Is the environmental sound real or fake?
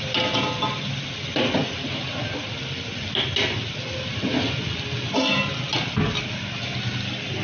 real